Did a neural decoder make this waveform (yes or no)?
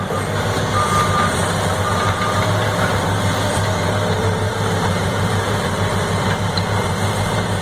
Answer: yes